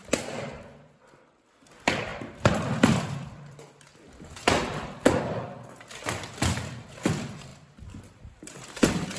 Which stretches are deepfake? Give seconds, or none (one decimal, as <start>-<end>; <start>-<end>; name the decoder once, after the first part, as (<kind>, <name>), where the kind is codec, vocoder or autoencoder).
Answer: 0.0-9.2 (vocoder, BigVGAN v2)